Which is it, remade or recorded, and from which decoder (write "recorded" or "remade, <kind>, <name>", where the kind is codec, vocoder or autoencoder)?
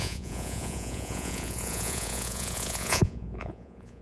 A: remade, vocoder, Vocos